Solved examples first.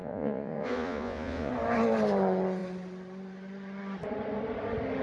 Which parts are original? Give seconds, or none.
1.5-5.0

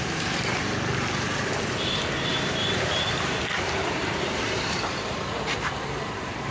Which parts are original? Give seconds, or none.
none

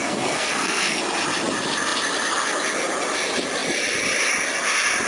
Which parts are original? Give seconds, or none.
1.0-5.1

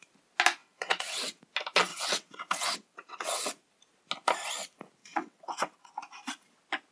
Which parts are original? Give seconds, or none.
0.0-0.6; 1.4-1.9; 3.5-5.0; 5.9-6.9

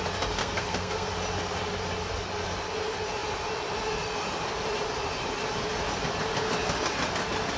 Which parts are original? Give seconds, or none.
0.0-0.4; 1.1-7.6

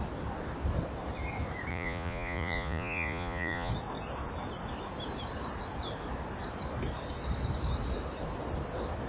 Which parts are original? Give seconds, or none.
0.0-1.7; 3.7-9.1

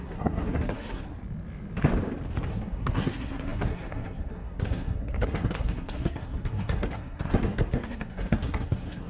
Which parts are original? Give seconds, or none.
1.1-2.5